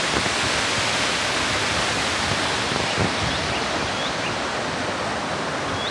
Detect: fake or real real